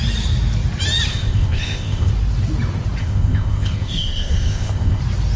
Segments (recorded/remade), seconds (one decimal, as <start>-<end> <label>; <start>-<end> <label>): 0.0-1.1 recorded; 1.1-2.1 remade; 2.1-3.0 recorded; 3.0-5.0 remade; 5.0-5.4 recorded